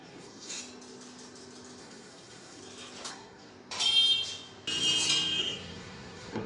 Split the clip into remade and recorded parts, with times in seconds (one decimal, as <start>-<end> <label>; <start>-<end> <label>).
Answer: 0.0-0.6 remade; 0.6-1.8 recorded; 1.8-2.6 remade; 2.6-3.1 recorded; 3.1-3.5 remade; 3.5-5.4 recorded; 5.4-6.5 remade